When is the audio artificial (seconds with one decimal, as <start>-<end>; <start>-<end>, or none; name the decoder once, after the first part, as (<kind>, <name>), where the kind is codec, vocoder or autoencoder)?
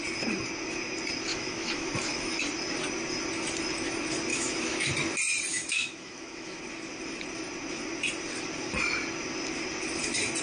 1.3-2.4 (autoencoder, DAC-VAE); 4.3-4.9; 5.5-6.6